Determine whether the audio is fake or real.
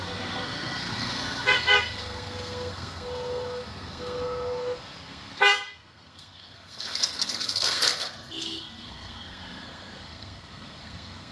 fake